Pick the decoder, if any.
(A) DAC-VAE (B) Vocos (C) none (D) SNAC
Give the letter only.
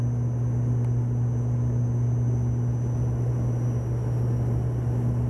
C